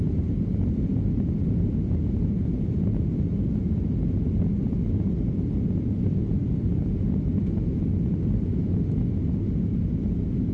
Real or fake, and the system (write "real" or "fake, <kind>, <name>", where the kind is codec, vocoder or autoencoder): real